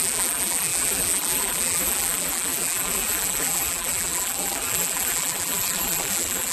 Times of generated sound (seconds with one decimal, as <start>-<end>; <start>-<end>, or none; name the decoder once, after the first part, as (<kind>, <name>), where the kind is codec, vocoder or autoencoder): 0.0-6.5 (vocoder, BigVGAN v2)